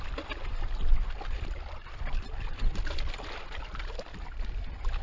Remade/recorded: recorded